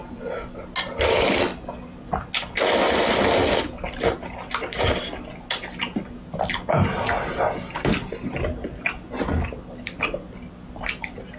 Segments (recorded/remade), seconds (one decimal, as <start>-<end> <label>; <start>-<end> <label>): 0.0-11.4 recorded